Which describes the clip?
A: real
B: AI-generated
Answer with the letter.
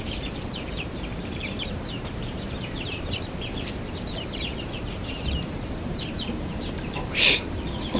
B